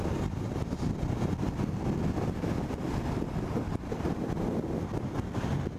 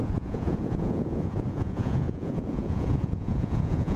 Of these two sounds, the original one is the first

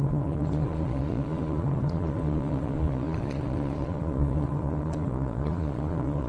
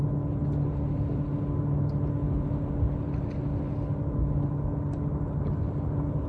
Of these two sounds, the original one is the second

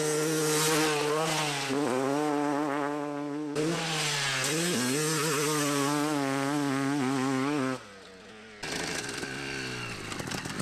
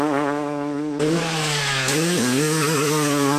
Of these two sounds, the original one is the first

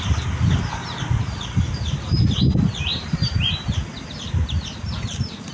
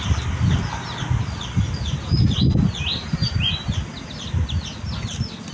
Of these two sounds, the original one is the second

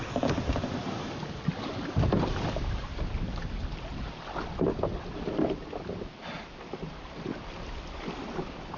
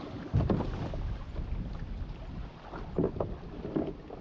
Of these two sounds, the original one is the second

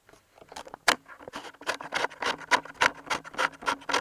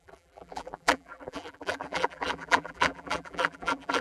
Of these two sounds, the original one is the first